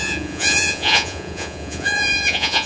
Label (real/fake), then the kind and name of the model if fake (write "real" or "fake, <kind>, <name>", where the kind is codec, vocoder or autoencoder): fake, vocoder, Vocos